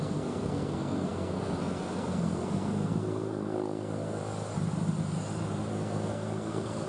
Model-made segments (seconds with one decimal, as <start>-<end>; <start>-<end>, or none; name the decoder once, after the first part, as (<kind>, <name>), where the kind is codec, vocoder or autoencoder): 0.0-4.2 (codec, SNAC); 5.7-6.9